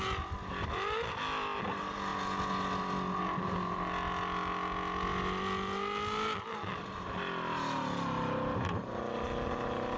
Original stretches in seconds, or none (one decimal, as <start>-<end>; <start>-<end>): 0.0-10.0